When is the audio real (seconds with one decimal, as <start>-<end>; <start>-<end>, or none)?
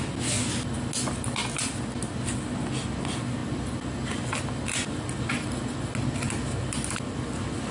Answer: 0.0-7.7